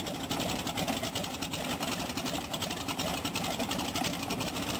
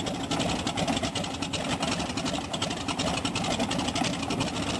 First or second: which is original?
second